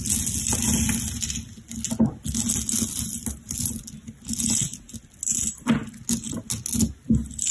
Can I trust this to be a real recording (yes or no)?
yes